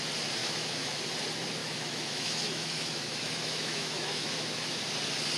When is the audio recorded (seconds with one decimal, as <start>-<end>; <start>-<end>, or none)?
0.0-0.4; 1.0-1.6; 4.8-5.4